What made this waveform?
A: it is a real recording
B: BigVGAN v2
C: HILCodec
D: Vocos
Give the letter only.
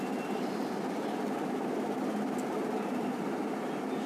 A